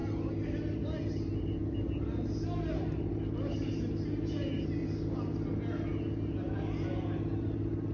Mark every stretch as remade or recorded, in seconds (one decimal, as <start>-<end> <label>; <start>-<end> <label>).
0.0-7.9 recorded